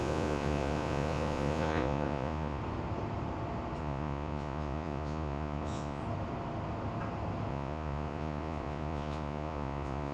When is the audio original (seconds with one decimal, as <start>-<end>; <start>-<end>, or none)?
2.6-3.8; 6.0-7.5